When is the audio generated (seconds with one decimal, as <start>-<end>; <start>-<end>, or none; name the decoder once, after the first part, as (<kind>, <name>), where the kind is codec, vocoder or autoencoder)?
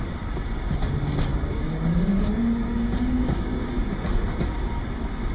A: 1.3-3.9 (codec, DAC)